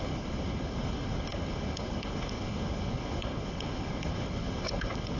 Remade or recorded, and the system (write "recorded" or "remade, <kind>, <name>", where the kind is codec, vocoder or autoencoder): remade, codec, HILCodec